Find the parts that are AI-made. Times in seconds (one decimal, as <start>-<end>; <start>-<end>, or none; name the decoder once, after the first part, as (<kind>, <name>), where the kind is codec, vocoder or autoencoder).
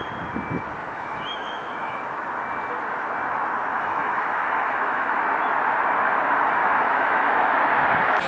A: 0.8-2.0 (autoencoder, DAC-VAE); 3.7-5.2; 6.6-7.5